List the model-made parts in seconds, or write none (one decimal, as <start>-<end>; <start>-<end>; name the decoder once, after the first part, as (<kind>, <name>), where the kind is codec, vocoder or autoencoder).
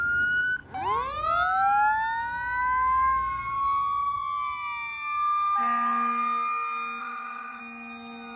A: 7.0-7.6 (vocoder, WaveNeXt)